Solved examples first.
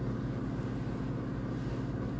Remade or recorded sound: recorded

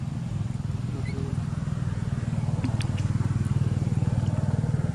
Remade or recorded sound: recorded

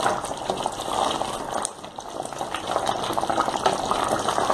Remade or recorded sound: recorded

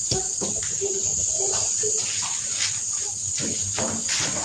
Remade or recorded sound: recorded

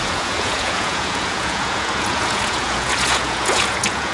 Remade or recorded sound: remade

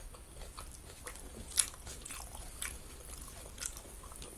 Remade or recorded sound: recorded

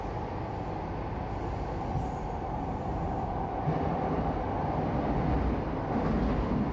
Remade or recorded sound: recorded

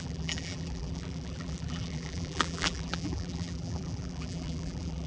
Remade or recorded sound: remade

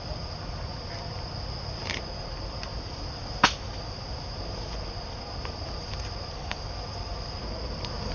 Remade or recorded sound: recorded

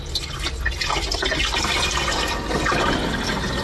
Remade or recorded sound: recorded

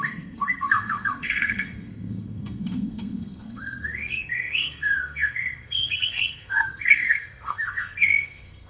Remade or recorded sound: remade